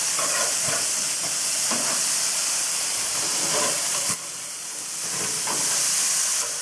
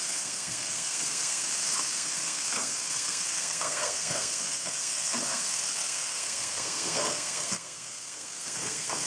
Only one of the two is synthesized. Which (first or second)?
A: second